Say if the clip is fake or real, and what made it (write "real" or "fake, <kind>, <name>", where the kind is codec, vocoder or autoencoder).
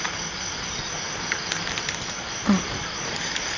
real